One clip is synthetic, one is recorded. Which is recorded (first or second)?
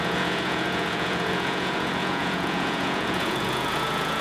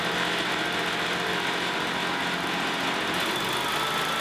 second